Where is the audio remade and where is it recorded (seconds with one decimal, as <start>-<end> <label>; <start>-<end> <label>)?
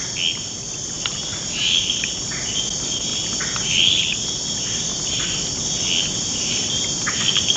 0.0-7.6 recorded